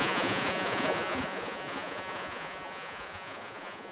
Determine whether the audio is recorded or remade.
remade